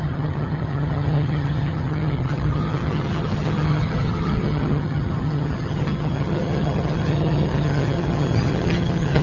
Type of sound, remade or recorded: remade